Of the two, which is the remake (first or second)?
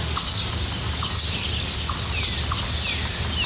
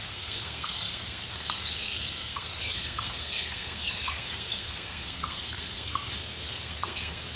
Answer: second